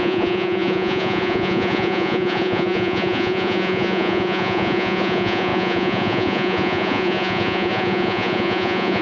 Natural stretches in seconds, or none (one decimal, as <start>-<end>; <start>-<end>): none